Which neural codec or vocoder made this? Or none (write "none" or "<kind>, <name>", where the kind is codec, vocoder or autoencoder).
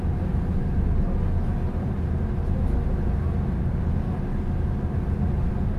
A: none